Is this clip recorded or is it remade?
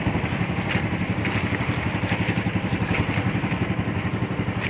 recorded